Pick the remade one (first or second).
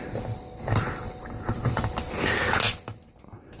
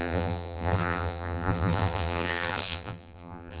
second